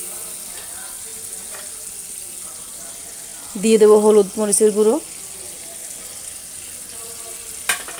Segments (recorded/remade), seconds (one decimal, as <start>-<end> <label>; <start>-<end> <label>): 0.0-8.0 recorded